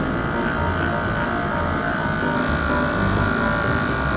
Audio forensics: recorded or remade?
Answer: remade